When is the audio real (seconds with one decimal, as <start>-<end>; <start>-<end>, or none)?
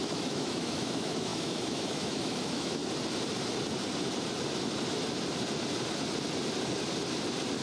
2.8-7.6